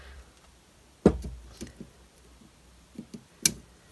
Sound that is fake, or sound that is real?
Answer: real